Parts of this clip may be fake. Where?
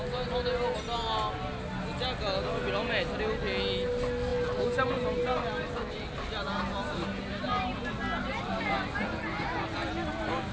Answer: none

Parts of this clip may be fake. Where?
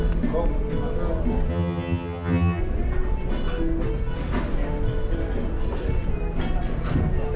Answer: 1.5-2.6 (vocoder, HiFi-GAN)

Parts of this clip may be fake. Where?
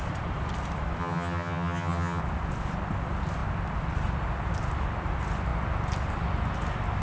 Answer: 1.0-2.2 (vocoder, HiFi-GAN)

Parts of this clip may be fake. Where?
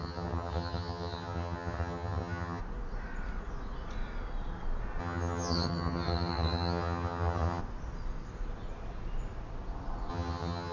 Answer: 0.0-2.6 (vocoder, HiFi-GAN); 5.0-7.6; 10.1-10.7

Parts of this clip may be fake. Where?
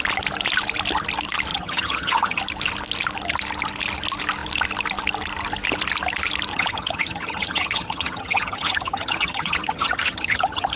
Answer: 1.5-2.4 (vocoder, HiFi-GAN); 6.5-10.8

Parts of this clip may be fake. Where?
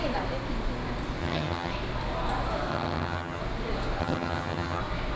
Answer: 1.2-1.7 (vocoder, HiFi-GAN); 2.7-3.4; 4.0-4.8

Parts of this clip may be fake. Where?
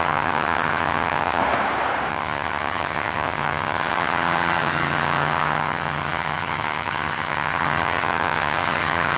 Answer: 0.0-1.4 (vocoder, HiFi-GAN); 2.1-9.2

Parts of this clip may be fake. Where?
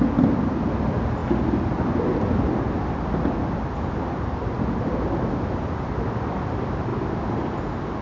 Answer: none